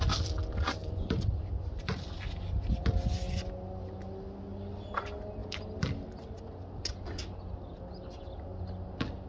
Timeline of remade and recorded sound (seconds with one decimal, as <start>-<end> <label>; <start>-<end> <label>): 0.0-0.8 recorded; 0.8-1.3 remade; 1.3-9.3 recorded